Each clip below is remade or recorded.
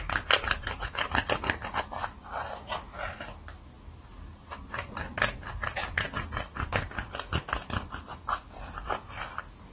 remade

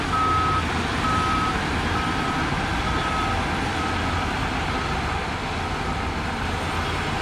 recorded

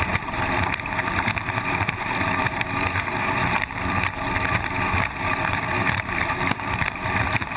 remade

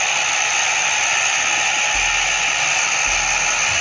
recorded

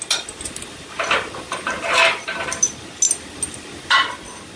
recorded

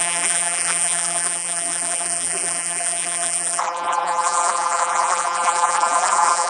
remade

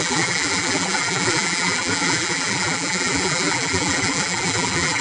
remade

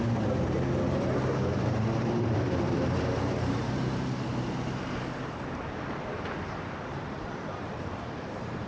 remade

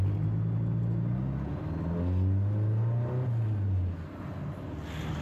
recorded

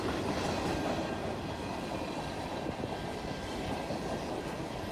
recorded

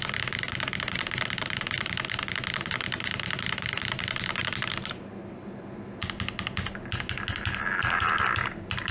recorded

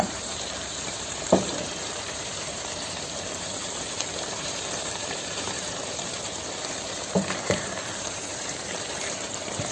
remade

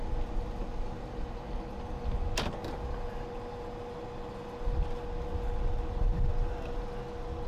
recorded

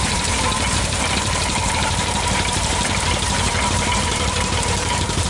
remade